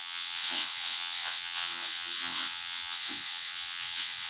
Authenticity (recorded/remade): remade